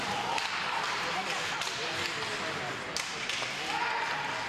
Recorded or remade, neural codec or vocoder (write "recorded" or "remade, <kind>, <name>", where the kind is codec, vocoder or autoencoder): recorded